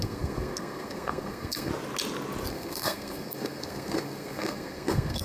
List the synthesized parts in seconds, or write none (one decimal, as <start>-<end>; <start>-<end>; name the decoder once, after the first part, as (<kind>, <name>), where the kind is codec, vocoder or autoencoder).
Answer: 0.0-1.7 (codec, SNAC); 2.5-5.2